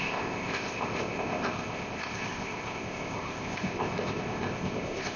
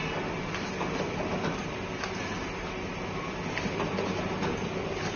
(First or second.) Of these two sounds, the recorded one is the second